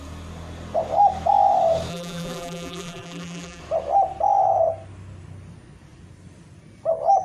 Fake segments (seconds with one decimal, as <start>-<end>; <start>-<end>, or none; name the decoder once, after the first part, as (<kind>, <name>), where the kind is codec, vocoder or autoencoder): 1.9-3.6 (vocoder, BigVGAN v2)